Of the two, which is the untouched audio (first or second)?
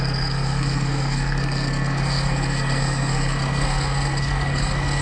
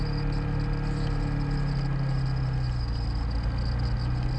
second